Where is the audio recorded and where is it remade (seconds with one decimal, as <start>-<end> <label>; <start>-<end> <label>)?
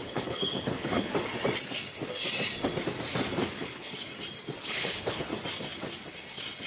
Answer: 0.0-1.1 remade; 1.1-3.6 recorded; 3.6-4.1 remade; 4.1-4.6 recorded; 4.6-5.3 remade; 5.3-6.7 recorded